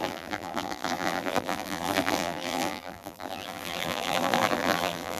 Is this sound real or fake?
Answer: fake